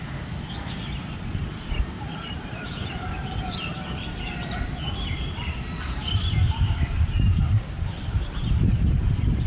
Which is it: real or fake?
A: fake